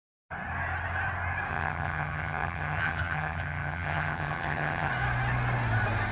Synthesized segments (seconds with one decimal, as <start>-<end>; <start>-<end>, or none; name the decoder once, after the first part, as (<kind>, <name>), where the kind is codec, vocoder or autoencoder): 1.5-4.9 (vocoder, HiFi-GAN)